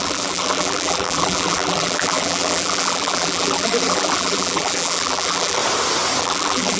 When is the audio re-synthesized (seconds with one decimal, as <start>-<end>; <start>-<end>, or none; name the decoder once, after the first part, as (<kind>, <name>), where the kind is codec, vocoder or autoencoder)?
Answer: 0.0-5.6 (vocoder, BigVGAN v2); 6.2-6.8